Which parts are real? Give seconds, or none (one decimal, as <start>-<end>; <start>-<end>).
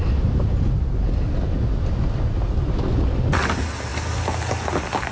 0.0-5.1